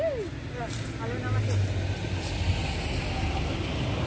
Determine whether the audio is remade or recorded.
recorded